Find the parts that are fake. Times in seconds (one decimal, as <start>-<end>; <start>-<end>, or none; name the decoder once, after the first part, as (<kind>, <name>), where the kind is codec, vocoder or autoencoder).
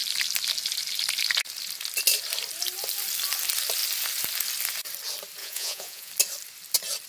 5.4-6.1 (vocoder, Vocos)